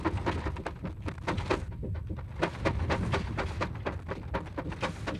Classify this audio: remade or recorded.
recorded